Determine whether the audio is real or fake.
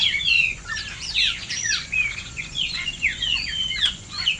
fake